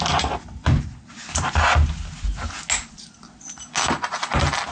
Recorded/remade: recorded